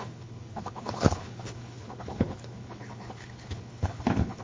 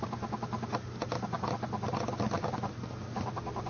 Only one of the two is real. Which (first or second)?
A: second